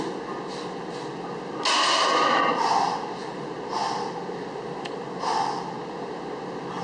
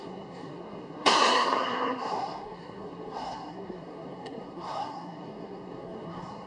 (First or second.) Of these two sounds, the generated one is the second